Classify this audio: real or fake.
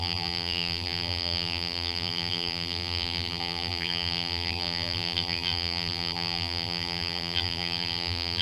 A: fake